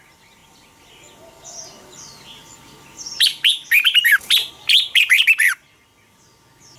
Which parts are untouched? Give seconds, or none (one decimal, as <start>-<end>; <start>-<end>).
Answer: 0.0-6.8